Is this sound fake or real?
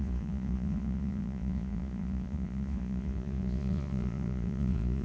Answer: fake